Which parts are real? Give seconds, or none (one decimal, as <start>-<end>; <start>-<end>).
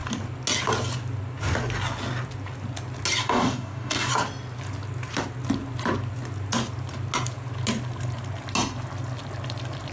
0.0-3.2; 4.1-9.9